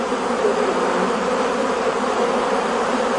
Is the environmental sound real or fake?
fake